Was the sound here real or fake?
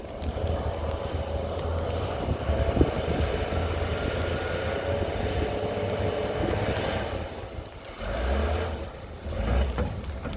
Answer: real